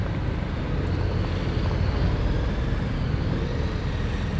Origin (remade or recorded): recorded